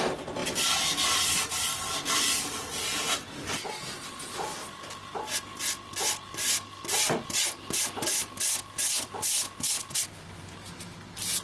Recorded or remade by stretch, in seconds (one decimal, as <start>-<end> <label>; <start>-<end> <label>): 0.0-11.4 recorded